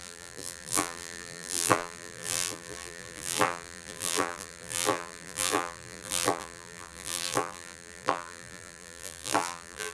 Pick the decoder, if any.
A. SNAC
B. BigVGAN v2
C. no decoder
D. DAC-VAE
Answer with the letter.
B